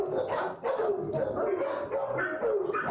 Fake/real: real